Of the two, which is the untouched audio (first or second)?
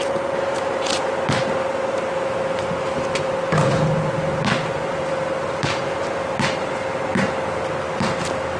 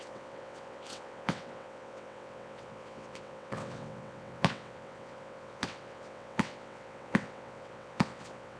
first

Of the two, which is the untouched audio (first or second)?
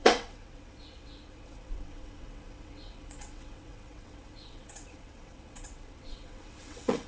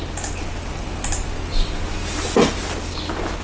second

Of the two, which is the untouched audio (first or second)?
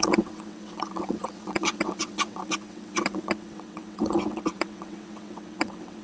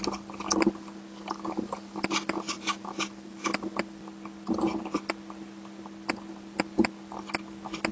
second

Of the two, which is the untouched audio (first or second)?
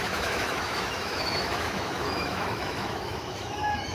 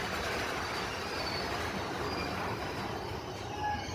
second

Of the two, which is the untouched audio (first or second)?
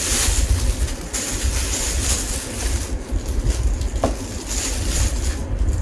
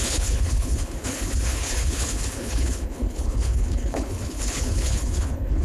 first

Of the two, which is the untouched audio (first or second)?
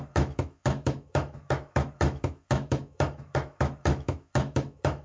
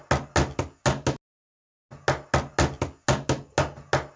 second